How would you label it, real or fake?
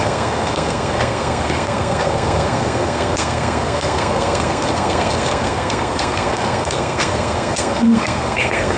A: fake